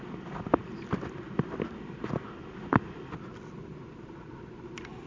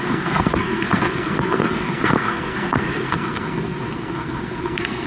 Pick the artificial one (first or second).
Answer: second